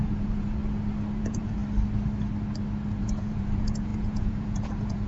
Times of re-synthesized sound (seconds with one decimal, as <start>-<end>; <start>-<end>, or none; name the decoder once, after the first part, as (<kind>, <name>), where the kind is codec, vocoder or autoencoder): 0.0-0.6 (vocoder, Vocos); 1.2-1.6; 3.0-5.1